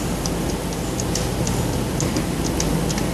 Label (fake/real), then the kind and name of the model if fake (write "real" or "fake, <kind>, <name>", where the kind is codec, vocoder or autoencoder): real